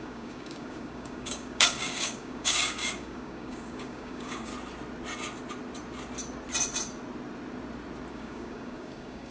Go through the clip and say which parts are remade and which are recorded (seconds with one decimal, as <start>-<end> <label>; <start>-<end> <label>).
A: 0.0-4.5 remade; 4.5-8.1 recorded; 8.1-9.3 remade